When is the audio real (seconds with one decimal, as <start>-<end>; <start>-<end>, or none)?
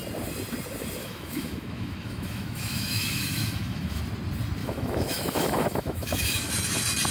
0.0-1.0; 4.0-4.6; 6.5-7.1